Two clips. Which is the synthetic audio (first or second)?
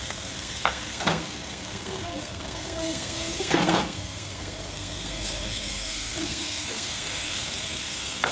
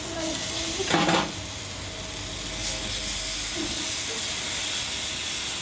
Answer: first